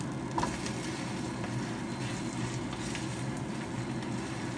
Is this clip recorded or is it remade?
recorded